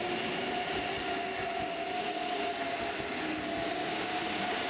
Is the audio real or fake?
real